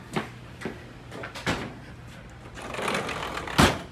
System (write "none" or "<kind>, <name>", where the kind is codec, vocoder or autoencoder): none